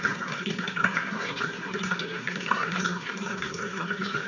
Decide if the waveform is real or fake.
fake